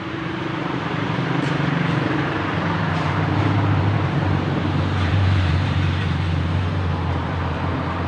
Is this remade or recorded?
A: remade